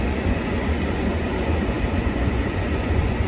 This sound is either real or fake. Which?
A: fake